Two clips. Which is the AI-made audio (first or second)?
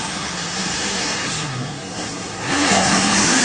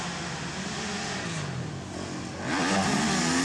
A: first